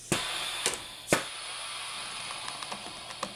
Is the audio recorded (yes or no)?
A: yes